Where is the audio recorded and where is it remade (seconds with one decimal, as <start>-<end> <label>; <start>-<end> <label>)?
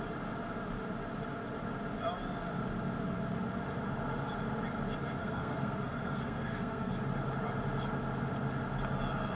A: 0.0-5.2 recorded; 5.2-6.9 remade; 6.9-9.4 recorded